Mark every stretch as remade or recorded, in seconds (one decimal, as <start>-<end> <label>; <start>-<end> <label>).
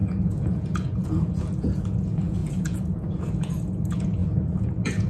0.0-5.1 remade